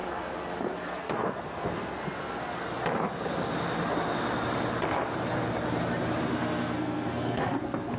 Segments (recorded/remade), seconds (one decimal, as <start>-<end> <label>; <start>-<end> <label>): 0.0-0.9 recorded; 0.9-2.0 remade; 2.0-6.2 recorded; 6.2-8.0 remade